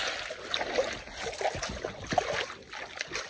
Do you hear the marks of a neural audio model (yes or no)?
no